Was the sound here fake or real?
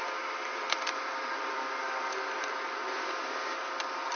real